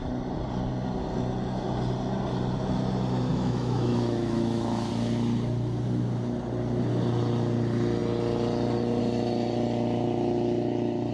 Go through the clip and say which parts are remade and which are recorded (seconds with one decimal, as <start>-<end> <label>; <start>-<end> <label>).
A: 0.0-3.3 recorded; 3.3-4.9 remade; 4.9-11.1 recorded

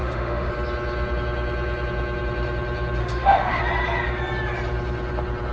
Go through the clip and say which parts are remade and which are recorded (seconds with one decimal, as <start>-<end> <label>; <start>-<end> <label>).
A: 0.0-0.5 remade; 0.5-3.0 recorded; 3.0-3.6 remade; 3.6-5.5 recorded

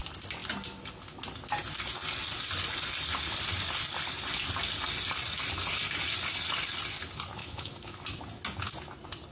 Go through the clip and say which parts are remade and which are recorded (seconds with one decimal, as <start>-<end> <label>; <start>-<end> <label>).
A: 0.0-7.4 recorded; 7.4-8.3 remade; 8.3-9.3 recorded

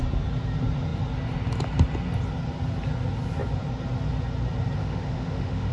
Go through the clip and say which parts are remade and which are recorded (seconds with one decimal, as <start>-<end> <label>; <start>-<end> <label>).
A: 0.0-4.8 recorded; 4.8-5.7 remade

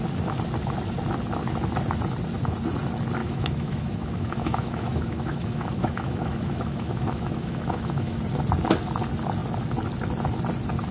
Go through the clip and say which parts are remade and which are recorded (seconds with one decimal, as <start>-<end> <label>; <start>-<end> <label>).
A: 0.0-3.2 recorded; 3.2-8.2 remade; 8.2-10.9 recorded

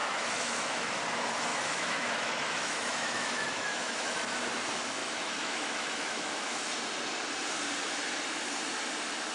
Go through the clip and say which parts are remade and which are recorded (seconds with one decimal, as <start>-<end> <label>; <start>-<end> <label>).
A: 0.0-1.0 remade; 1.0-1.5 recorded; 1.5-4.2 remade; 4.2-5.0 recorded; 5.0-6.7 remade; 6.7-9.3 recorded